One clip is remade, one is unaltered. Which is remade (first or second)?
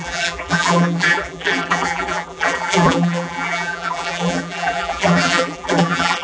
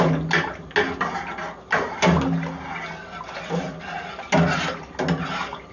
first